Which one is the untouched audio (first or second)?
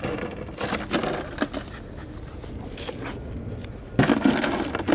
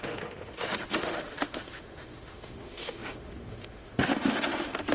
first